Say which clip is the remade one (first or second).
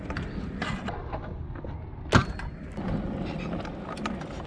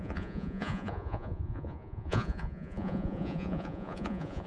second